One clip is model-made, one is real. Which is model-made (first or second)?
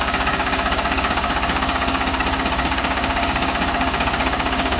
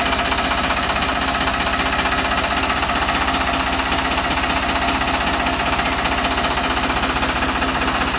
first